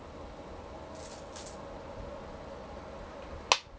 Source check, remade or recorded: recorded